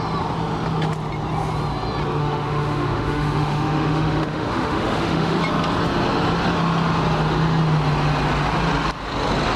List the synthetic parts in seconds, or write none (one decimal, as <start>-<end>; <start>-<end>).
2.2-5.4